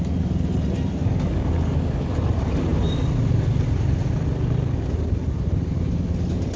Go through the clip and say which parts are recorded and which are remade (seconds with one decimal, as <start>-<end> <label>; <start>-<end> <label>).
0.0-1.0 recorded; 1.0-2.1 remade; 2.1-6.6 recorded

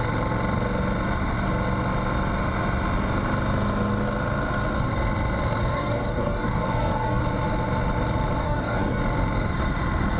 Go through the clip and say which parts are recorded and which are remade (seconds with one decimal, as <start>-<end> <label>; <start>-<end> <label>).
0.0-5.6 recorded; 5.6-7.2 remade; 7.2-8.4 recorded; 8.4-9.0 remade; 9.0-10.2 recorded

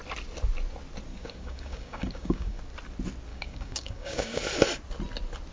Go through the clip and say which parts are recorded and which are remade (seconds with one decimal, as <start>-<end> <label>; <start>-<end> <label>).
0.0-1.1 recorded; 1.1-2.6 remade; 2.6-3.3 recorded; 3.3-4.4 remade; 4.4-5.5 recorded

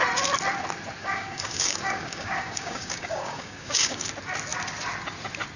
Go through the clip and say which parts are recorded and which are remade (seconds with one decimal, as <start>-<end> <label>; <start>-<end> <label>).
0.0-1.0 recorded; 1.0-4.1 remade; 4.1-5.6 recorded

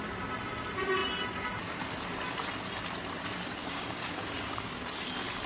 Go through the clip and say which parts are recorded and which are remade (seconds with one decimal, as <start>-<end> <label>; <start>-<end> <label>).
0.0-3.6 recorded; 3.6-4.7 remade; 4.7-5.5 recorded

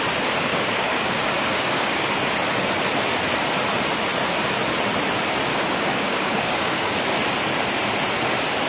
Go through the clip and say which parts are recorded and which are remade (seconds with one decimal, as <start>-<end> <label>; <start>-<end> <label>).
0.0-0.5 recorded; 0.5-2.1 remade; 2.1-5.5 recorded; 5.5-7.0 remade; 7.0-8.7 recorded